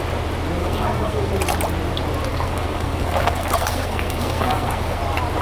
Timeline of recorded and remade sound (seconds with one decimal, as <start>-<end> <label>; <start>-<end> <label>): 0.0-0.6 recorded; 0.6-1.3 remade; 1.3-2.3 recorded; 2.3-5.0 remade; 5.0-5.4 recorded